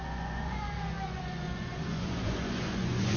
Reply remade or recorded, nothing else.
remade